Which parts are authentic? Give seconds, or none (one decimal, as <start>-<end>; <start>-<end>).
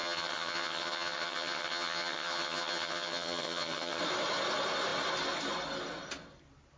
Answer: 4.0-6.8